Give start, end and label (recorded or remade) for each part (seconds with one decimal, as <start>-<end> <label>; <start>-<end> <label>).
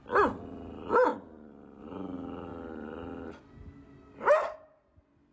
0.0-5.3 recorded